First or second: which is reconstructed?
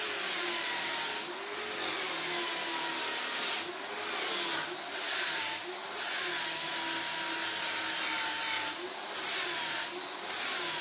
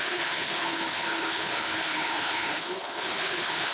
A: second